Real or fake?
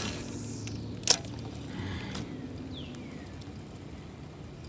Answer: real